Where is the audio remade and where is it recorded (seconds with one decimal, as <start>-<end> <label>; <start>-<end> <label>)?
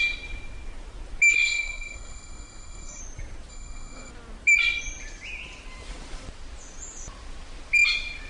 0.0-1.3 recorded; 1.3-3.0 remade; 3.0-3.5 recorded; 3.5-4.1 remade; 4.1-8.3 recorded